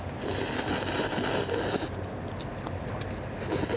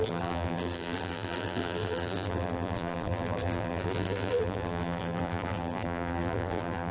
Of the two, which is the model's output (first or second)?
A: second